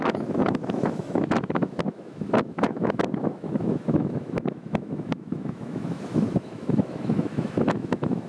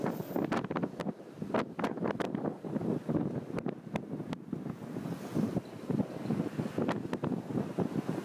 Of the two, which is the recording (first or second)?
second